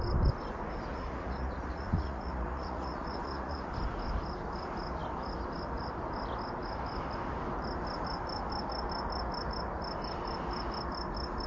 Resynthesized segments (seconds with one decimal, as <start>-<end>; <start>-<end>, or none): 0.9-3.7